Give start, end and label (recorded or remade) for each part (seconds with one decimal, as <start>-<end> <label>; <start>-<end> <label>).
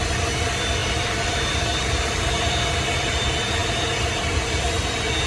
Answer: 0.0-0.8 recorded; 0.8-2.6 remade; 2.6-3.6 recorded; 3.6-4.6 remade; 4.6-5.3 recorded